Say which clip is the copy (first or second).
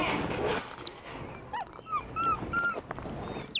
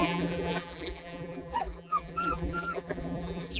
second